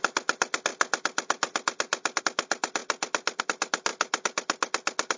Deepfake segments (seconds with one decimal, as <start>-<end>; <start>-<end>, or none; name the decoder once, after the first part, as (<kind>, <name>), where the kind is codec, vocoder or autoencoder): none